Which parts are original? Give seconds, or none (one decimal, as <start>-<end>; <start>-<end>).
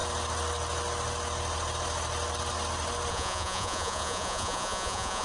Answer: 0.0-3.1